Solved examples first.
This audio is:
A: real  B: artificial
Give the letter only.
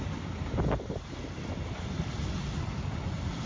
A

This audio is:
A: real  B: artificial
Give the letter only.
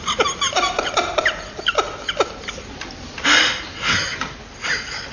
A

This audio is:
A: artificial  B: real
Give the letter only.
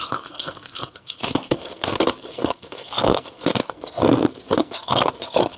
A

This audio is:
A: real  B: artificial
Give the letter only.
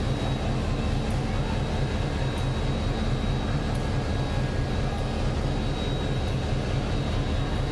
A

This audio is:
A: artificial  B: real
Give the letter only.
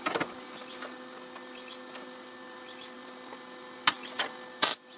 B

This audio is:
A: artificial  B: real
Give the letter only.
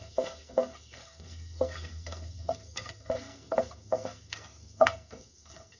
A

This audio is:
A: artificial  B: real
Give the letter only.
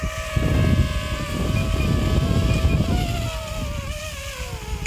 B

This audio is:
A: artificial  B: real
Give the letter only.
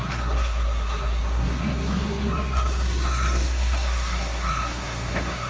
A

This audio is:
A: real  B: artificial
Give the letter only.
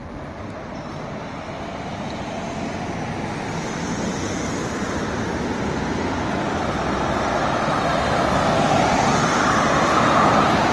A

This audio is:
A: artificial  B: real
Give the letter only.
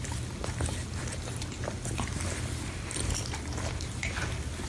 B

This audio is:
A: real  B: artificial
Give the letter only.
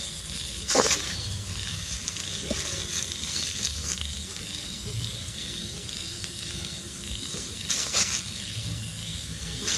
B